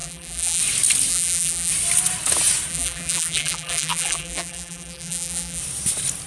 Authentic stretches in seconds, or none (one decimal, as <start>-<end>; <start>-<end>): 0.6-1.1; 1.7-2.7; 5.6-6.3